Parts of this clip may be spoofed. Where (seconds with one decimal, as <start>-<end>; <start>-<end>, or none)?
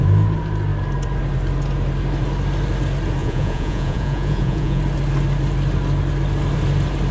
3.2-4.8